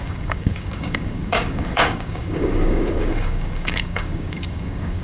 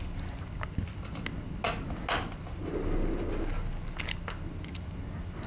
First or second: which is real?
second